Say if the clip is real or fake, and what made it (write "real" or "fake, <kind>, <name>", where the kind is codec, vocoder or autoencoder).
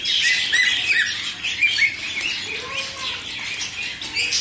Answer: real